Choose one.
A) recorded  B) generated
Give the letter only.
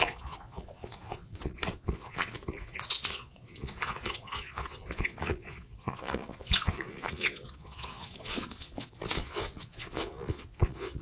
B